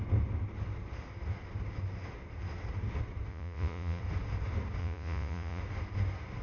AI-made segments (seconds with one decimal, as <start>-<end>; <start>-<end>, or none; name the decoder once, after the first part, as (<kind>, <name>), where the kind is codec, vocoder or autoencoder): 3.3-4.0 (vocoder, Vocos); 4.8-5.6